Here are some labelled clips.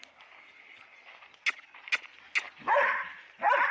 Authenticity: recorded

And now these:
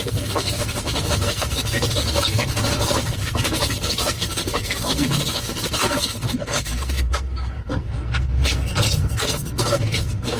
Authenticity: remade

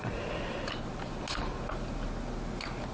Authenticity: recorded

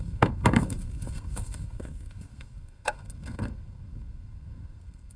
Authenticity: remade